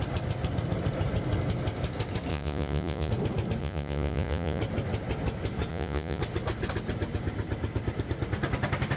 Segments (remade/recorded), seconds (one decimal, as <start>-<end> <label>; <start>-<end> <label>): 0.0-2.3 recorded; 2.3-3.1 remade; 3.1-3.6 recorded; 3.6-4.6 remade; 4.6-5.7 recorded; 5.7-6.2 remade; 6.2-9.0 recorded